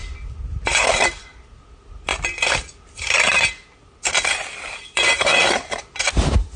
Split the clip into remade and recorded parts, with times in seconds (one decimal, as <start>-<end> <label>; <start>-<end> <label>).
0.0-2.1 recorded; 2.1-6.0 remade; 6.0-6.6 recorded